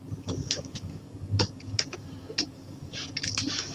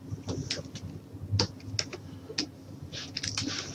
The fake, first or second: first